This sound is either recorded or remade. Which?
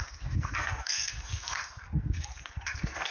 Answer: remade